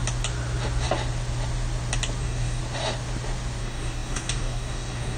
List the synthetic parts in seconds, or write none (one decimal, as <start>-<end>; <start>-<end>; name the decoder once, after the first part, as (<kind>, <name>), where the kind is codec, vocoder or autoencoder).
2.2-2.6 (codec, DAC); 3.6-5.2